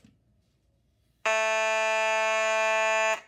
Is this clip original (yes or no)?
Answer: yes